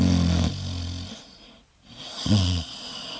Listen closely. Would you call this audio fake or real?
real